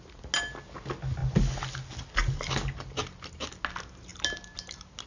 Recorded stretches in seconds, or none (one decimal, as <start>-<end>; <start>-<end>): 0.0-5.1